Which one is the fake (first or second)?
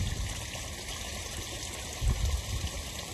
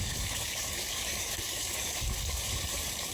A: second